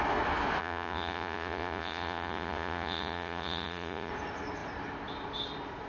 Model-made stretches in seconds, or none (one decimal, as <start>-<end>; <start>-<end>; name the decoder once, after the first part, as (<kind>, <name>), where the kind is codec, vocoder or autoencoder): 0.6-4.1 (vocoder, Vocos)